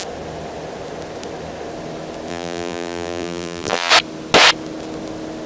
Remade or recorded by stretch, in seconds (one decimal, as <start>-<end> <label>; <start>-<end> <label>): 0.0-2.3 recorded; 2.3-3.9 remade; 3.9-5.5 recorded